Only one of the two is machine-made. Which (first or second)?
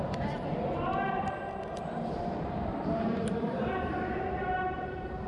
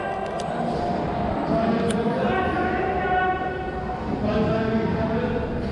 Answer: first